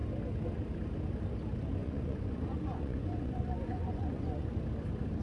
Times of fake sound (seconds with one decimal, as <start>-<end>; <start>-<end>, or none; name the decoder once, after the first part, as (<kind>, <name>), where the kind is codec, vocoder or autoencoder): 1.8-4.5 (vocoder, Vocos)